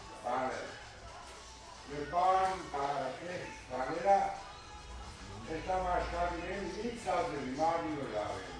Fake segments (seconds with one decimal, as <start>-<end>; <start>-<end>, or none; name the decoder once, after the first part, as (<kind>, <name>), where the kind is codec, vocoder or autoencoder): 2.0-3.8 (codec, SNAC)